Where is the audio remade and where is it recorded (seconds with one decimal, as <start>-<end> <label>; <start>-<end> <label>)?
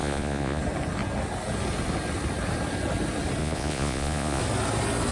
0.0-0.6 remade; 0.6-3.4 recorded; 3.4-4.4 remade; 4.4-5.1 recorded